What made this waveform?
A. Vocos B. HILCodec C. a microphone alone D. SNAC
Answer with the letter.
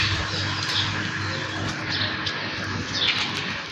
C